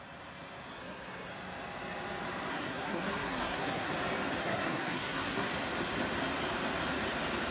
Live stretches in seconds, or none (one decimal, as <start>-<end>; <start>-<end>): 0.0-0.7; 1.3-2.5; 3.9-4.4; 5.5-7.5